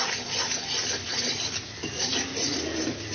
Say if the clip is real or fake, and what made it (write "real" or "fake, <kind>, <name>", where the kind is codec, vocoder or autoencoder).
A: real